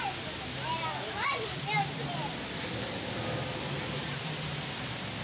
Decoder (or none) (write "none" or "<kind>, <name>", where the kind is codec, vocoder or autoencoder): none